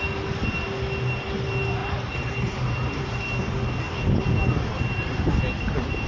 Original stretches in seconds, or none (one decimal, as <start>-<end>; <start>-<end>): 0.0-1.8; 3.2-6.1